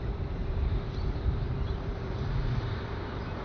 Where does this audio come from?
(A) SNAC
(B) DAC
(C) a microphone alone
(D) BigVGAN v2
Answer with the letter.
D